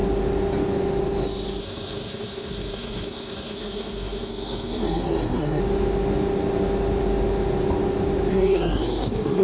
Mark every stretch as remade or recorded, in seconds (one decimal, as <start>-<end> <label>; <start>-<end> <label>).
0.0-1.6 recorded; 1.6-5.6 remade; 5.6-8.3 recorded; 8.3-9.4 remade